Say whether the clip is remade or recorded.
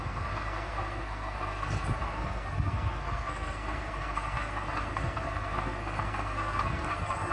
remade